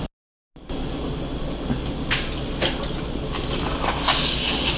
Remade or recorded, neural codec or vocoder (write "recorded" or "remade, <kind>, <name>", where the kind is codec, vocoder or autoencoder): recorded